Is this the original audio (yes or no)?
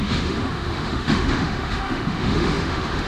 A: no